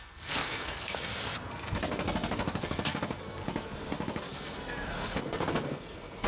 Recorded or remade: remade